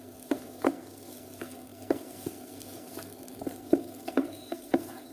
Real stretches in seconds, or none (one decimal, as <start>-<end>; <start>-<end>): none